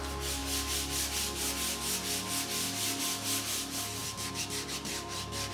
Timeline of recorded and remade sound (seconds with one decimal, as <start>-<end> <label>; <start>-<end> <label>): 0.0-4.0 recorded; 4.0-5.5 remade